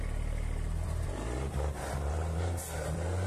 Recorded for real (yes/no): no